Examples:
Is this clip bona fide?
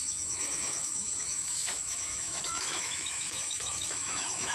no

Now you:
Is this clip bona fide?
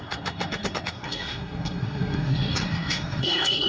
no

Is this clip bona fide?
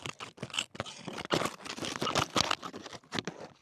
yes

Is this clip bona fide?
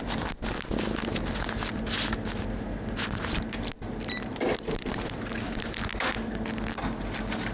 yes